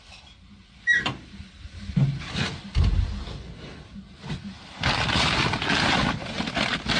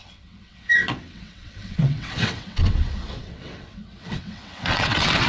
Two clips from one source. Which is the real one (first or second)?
first